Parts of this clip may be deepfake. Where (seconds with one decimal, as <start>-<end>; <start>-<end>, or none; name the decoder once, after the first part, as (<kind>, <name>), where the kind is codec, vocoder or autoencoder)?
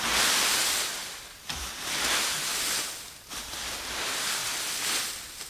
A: none